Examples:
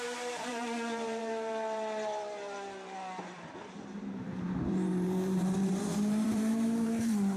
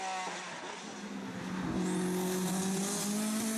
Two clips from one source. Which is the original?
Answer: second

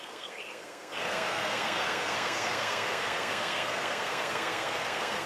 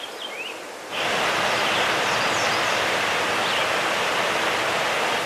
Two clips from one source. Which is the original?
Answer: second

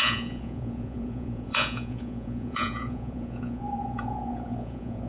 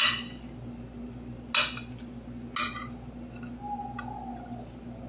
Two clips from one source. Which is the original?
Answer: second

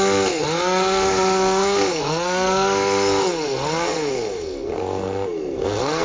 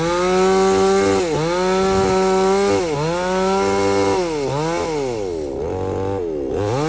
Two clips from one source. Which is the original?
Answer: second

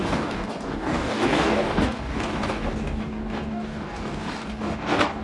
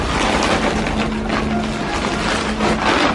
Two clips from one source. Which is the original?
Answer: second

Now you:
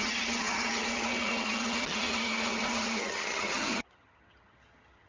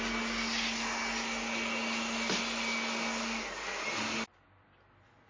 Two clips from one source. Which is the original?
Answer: second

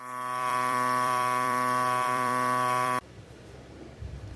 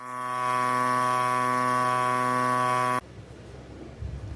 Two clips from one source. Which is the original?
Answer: second